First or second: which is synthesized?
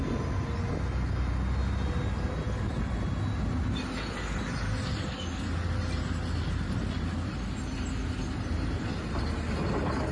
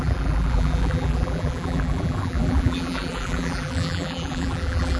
second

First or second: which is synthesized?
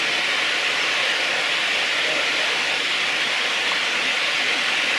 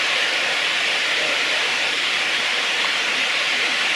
second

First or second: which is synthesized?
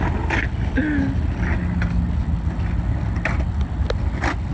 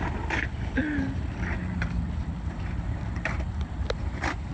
second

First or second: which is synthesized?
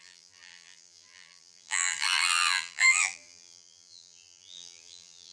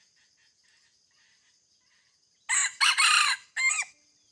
first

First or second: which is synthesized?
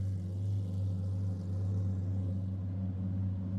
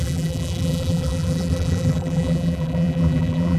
second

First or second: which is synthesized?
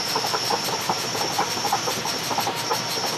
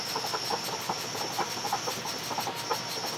first